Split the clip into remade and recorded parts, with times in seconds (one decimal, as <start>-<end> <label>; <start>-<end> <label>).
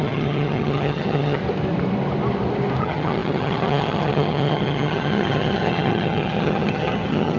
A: 0.0-1.4 remade; 1.4-2.8 recorded; 2.8-7.4 remade